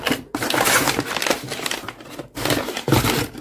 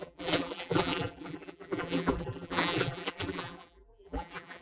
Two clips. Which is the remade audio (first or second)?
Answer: second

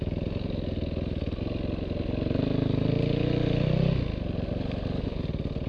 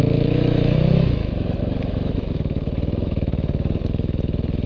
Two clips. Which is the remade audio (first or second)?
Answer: second